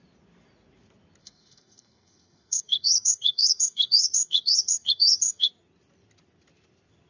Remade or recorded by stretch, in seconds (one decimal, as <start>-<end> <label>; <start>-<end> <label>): 0.0-1.2 recorded; 1.2-5.5 remade; 5.5-7.1 recorded